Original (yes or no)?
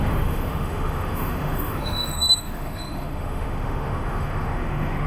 no